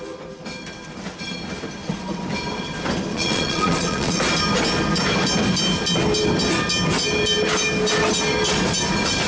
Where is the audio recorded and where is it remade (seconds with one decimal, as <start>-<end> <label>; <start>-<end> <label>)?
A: 0.0-3.1 recorded; 3.1-4.2 remade; 4.2-9.3 recorded